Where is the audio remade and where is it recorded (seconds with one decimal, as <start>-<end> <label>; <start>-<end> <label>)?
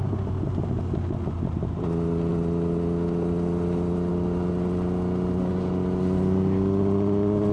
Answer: 0.0-7.5 recorded